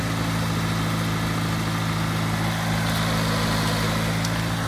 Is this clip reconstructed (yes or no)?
no